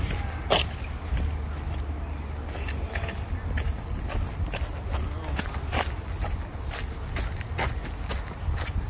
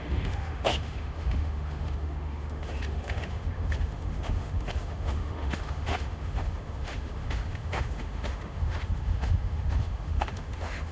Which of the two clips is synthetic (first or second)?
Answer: second